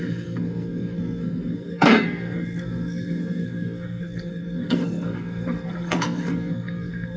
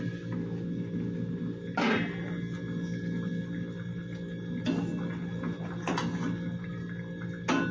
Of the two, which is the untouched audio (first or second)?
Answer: second